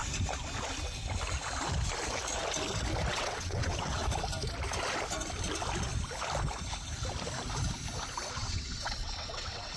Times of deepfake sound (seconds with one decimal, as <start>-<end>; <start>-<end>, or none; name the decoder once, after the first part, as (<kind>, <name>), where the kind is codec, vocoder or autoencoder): 3.1-4.0 (vocoder, WaveNeXt); 8.3-9.8